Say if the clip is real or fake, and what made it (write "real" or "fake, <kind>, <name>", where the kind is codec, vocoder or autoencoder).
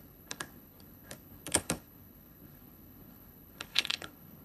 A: fake, codec, HILCodec